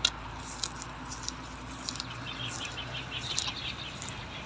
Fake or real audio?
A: real